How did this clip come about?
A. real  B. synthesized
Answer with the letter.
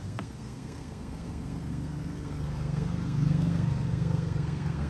B